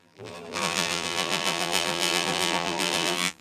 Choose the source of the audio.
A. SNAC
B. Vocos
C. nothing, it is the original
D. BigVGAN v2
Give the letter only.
D